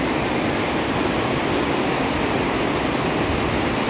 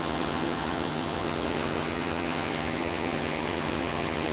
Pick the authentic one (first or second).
first